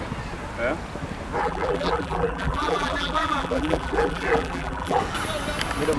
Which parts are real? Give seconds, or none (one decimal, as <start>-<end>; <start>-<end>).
0.0-1.4; 5.0-6.0